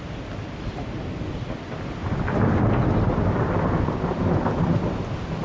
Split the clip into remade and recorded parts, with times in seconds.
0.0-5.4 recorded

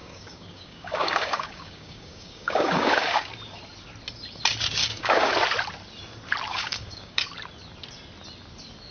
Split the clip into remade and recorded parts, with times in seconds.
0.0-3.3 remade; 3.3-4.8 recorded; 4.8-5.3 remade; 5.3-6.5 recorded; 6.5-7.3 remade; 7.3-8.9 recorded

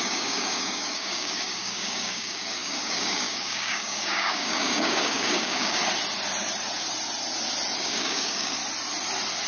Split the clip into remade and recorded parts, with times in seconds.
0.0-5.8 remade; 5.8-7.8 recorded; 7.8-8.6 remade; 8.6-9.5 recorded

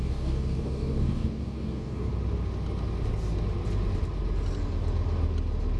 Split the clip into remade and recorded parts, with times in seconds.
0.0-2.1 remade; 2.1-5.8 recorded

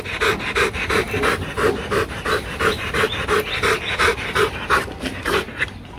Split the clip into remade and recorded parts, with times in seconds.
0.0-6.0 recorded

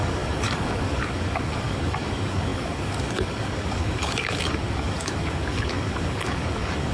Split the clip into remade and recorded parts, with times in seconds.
0.0-6.9 remade

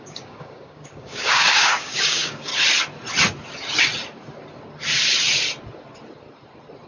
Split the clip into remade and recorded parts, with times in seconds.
0.0-2.5 remade; 2.5-6.9 recorded